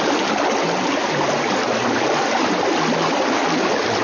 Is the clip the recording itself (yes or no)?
yes